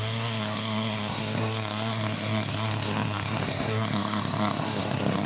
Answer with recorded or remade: remade